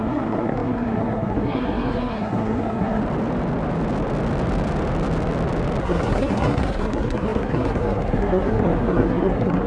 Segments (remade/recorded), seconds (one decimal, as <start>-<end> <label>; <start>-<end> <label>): 0.0-3.0 remade; 3.0-5.8 recorded; 5.8-9.7 remade